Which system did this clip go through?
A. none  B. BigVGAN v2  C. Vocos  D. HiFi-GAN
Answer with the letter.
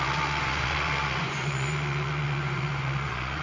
C